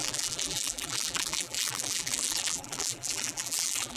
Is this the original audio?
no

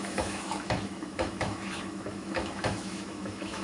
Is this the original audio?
no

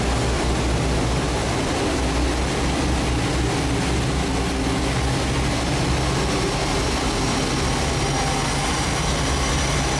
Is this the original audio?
yes